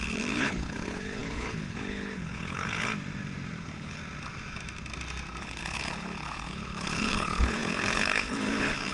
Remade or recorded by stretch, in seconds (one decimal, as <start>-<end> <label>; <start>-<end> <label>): 0.0-2.9 remade; 2.9-3.6 recorded; 3.6-4.0 remade; 4.0-5.4 recorded; 5.4-8.9 remade